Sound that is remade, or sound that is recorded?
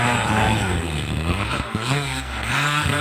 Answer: remade